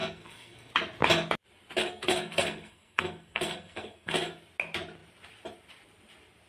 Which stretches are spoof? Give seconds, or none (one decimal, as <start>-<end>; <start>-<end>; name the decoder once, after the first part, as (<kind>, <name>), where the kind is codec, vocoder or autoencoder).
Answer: 0.0-0.7 (codec, SNAC); 1.8-4.3